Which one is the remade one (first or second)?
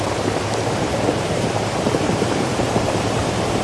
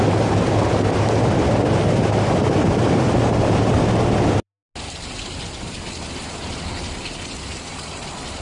first